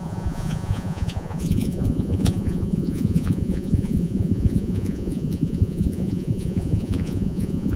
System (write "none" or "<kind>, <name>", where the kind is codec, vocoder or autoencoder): vocoder, Vocos